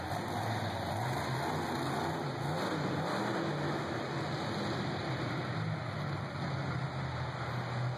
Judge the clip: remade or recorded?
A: recorded